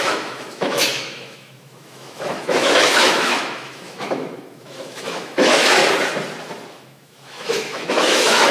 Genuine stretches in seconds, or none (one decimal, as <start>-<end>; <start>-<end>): 5.8-6.7